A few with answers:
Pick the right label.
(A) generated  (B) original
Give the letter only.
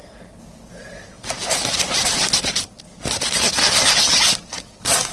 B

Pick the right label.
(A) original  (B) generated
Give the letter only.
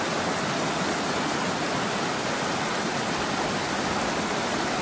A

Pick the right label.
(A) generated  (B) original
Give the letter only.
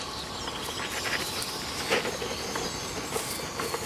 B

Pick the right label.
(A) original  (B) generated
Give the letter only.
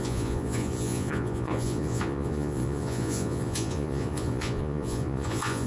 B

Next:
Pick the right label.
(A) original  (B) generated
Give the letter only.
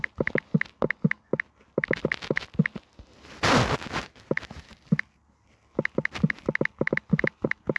A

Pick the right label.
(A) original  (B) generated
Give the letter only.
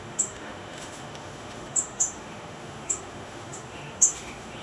B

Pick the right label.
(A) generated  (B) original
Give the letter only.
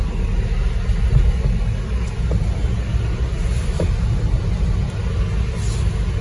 B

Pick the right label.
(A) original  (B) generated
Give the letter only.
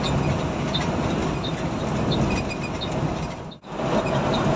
A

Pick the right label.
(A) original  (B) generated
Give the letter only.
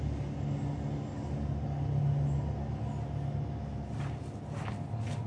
A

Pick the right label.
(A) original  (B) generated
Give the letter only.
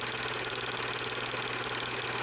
A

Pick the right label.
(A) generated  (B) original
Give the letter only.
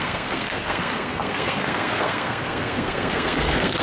A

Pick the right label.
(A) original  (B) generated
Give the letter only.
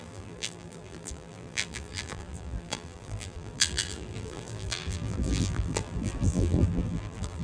B